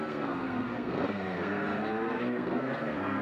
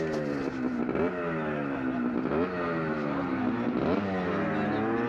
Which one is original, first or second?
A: second